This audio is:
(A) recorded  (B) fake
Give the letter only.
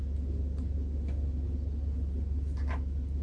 A